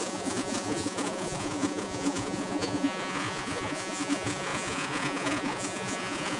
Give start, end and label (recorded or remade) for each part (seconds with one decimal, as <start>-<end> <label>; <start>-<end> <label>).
0.0-6.4 remade